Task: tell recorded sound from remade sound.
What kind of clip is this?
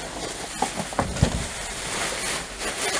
recorded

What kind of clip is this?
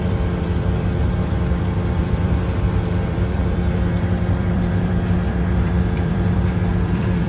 remade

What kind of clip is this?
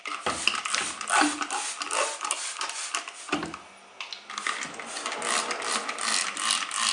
recorded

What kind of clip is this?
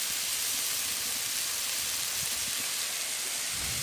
recorded